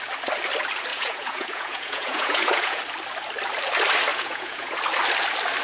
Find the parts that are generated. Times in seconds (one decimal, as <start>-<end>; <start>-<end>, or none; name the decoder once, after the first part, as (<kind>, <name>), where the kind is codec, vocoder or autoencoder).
0.9-2.8 (vocoder, Vocos); 4.1-4.8